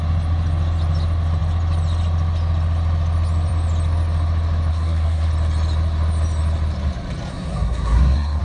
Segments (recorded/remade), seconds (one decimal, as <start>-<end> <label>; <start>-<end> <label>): 0.0-4.7 recorded; 4.7-5.3 remade; 5.3-7.3 recorded; 7.3-8.4 remade